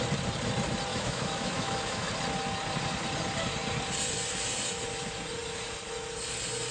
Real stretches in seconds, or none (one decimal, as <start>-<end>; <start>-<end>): 0.0-0.9; 2.1-6.7